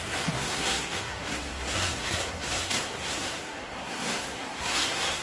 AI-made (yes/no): yes